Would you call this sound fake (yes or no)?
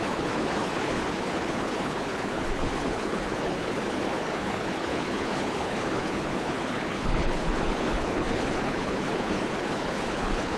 yes